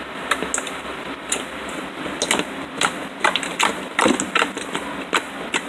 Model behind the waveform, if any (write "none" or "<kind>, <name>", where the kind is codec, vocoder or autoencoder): none